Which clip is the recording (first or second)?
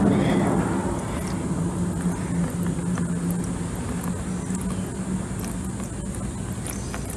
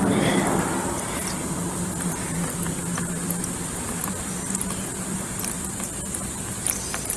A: first